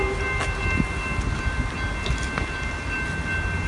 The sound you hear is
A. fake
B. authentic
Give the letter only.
B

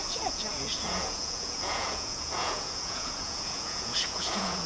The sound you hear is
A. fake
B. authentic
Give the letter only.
A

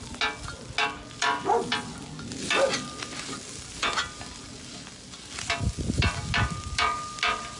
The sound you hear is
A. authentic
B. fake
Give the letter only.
A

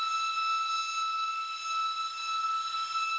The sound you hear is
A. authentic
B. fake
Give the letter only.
A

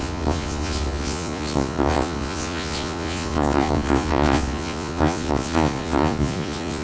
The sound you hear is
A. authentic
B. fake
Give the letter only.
B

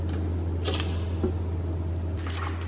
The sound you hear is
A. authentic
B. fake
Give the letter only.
A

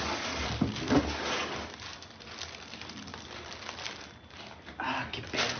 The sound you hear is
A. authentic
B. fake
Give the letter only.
A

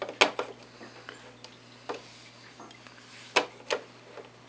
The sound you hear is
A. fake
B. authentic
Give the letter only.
B